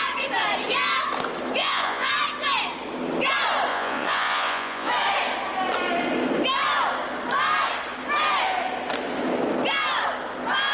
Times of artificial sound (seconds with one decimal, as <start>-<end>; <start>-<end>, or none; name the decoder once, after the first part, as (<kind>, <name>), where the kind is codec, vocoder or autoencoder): 1.6-2.1 (vocoder, Vocos); 3.7-4.9